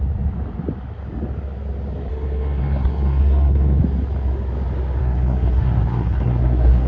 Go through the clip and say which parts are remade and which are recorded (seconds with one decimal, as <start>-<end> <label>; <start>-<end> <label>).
0.0-2.1 recorded; 2.1-3.8 remade; 3.8-5.0 recorded; 5.0-6.9 remade